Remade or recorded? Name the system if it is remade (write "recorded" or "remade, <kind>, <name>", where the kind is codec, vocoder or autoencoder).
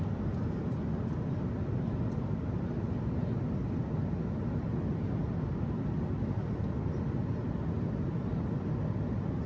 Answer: recorded